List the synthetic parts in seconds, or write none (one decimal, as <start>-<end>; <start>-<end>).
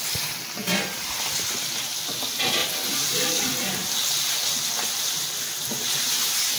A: 0.6-2.0; 2.6-4.3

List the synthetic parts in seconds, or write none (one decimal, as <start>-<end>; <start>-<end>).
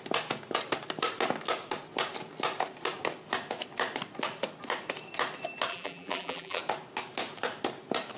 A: 5.7-6.6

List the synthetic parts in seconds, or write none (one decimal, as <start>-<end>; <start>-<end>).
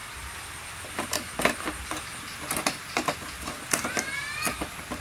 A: 2.3-2.9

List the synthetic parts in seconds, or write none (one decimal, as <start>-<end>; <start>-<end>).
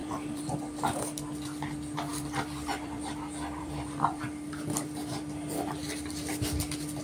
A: 0.0-0.5; 2.1-6.3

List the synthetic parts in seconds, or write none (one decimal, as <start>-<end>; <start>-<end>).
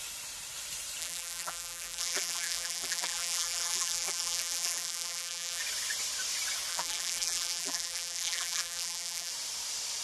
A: 1.0-5.6; 6.7-9.3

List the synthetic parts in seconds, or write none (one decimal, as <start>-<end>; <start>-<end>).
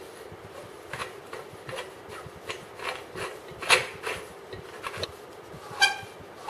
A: none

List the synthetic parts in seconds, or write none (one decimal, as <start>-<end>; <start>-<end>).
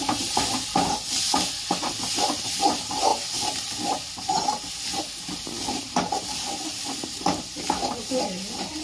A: none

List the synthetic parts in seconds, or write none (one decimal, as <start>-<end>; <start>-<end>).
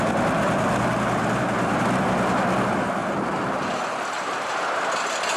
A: 0.9-1.8; 3.0-4.5